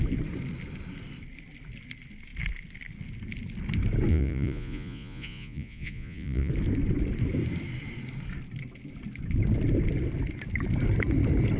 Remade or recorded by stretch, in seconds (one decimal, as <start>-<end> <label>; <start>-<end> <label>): 0.0-4.1 recorded; 4.1-6.5 remade; 6.5-11.6 recorded